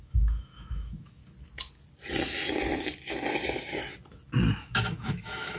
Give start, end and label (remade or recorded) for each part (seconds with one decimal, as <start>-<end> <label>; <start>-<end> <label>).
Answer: 0.0-1.2 remade; 1.2-4.5 recorded; 4.5-5.6 remade